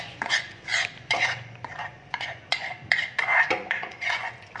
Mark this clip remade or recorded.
remade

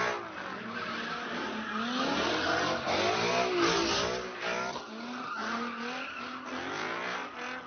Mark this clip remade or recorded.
recorded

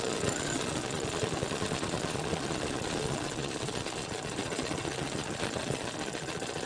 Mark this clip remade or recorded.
remade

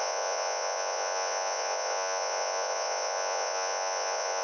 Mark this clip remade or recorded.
remade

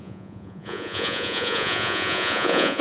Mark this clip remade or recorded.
remade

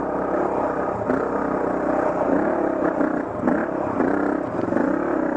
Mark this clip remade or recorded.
recorded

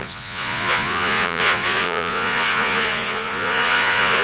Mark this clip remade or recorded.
remade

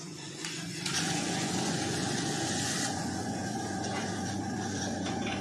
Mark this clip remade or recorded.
remade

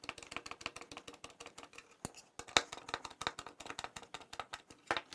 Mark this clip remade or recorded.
recorded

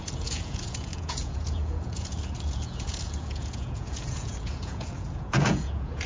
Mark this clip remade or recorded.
remade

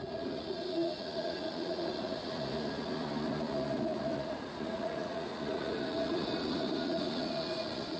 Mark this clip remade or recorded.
remade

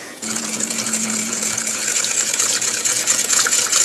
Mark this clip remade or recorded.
remade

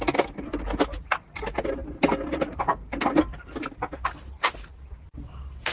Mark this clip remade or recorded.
recorded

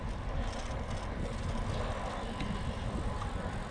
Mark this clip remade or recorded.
recorded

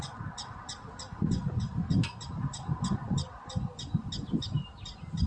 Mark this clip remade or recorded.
recorded